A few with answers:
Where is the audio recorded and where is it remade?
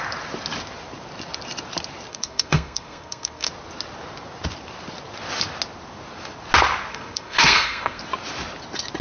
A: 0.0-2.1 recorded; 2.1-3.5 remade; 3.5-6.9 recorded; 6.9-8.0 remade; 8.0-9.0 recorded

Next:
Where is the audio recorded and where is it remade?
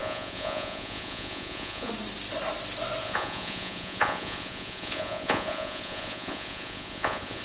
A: 0.0-1.9 remade; 1.9-3.0 recorded; 3.0-7.4 remade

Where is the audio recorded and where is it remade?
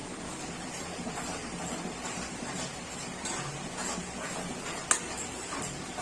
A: 0.0-6.0 recorded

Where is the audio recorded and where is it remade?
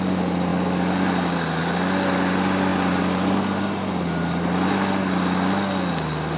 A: 0.0-6.4 recorded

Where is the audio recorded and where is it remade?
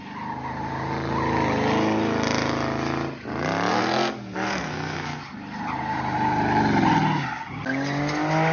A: 0.0-3.7 recorded; 3.7-5.2 remade; 5.2-8.5 recorded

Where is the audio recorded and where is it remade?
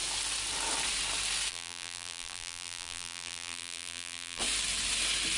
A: 0.0-1.5 recorded; 1.5-4.4 remade; 4.4-5.4 recorded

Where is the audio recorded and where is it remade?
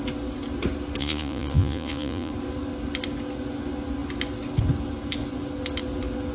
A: 0.0-1.0 recorded; 1.0-2.3 remade; 2.3-6.3 recorded